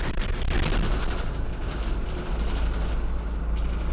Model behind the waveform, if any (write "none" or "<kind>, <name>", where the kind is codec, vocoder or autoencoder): none